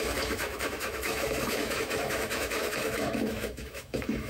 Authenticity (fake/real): fake